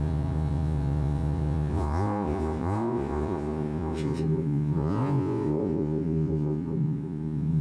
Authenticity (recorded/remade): remade